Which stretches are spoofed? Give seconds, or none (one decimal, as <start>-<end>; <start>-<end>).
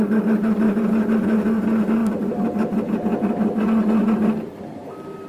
none